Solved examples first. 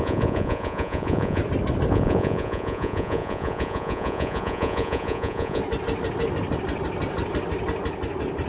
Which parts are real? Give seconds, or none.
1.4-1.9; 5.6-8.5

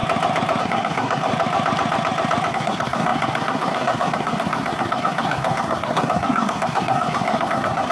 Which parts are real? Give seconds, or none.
0.0-0.6; 1.3-2.5